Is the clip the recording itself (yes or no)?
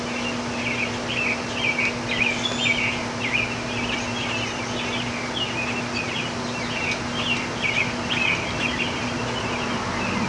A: yes